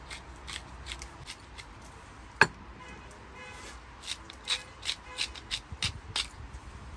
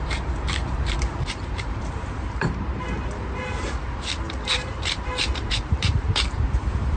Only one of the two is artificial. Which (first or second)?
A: second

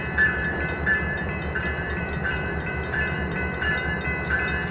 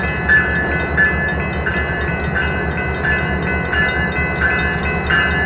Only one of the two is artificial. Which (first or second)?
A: first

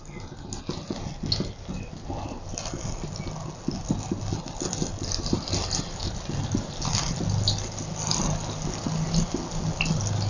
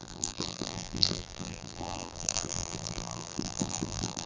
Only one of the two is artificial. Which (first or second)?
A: second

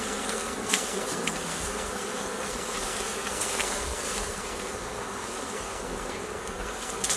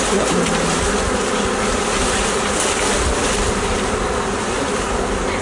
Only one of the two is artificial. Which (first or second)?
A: first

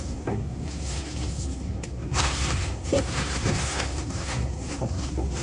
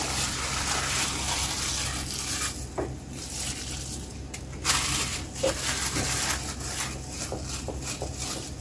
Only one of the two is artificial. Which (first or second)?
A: first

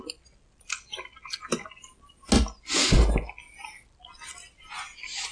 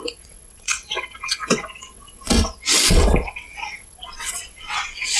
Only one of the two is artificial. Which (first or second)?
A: second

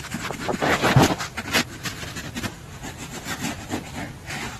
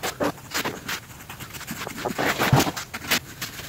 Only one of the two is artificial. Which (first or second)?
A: first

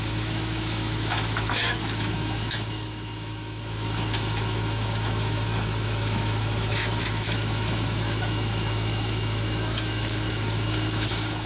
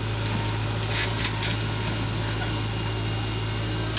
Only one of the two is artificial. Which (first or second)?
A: first